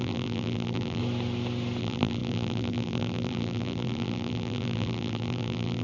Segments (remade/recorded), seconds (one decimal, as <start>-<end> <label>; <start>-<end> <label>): 0.0-1.0 remade; 1.0-1.8 recorded; 1.8-5.8 remade